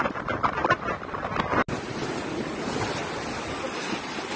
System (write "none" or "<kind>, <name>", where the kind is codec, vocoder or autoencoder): none